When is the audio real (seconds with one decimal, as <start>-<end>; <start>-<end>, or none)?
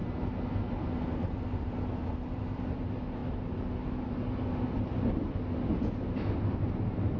0.0-7.2